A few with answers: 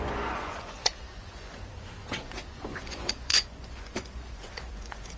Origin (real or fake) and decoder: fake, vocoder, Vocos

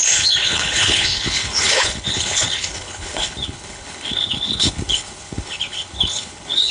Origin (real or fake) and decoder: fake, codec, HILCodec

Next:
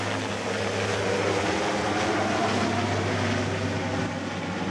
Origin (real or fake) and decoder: real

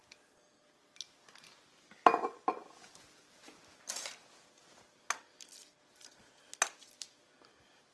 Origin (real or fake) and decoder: real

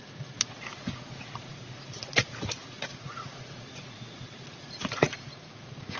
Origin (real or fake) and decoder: fake, vocoder, Vocos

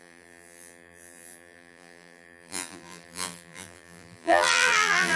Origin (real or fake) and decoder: fake, vocoder, BigVGAN v2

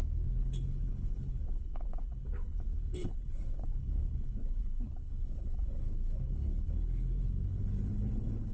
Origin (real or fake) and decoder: fake, codec, HILCodec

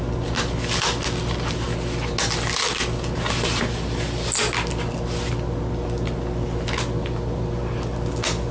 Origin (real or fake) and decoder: real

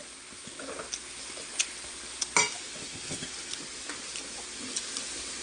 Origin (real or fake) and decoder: real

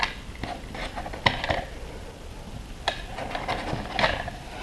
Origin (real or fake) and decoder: real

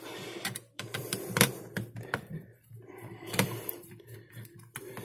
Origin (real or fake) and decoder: fake, vocoder, BigVGAN v2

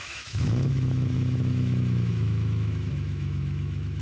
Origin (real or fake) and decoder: fake, autoencoder, DAC-VAE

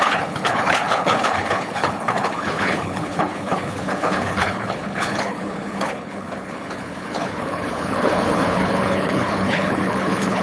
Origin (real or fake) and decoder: fake, codec, HILCodec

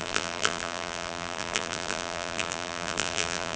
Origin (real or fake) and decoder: fake, vocoder, BigVGAN v2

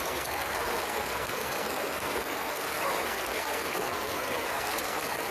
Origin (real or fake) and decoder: fake, codec, SNAC